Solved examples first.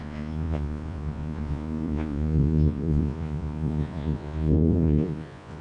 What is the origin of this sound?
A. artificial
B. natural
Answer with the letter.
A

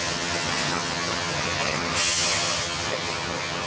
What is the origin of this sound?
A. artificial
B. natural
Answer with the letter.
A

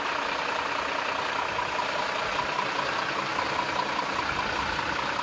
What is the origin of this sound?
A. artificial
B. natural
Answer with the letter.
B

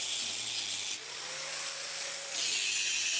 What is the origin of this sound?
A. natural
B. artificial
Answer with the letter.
A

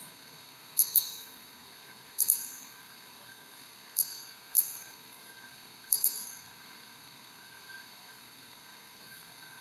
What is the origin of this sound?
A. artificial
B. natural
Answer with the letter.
A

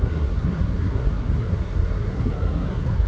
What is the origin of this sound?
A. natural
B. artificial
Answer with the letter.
B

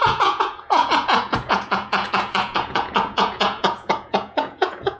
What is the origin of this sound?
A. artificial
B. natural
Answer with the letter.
A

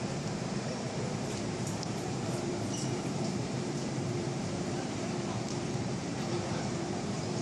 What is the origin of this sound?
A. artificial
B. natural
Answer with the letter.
A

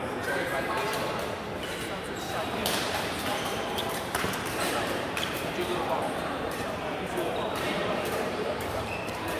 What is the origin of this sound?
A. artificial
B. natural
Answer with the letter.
A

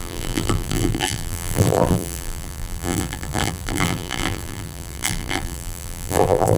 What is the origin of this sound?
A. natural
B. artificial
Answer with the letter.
B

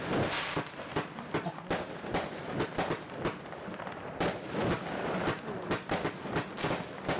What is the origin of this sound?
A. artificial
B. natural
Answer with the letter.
B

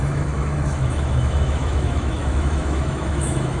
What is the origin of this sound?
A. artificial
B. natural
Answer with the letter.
A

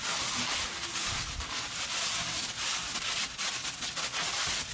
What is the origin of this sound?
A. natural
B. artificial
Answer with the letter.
A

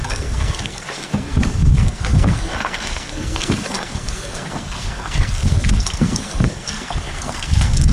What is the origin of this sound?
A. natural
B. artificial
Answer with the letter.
B